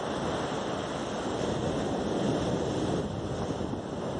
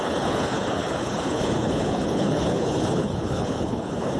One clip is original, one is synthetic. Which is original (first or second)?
first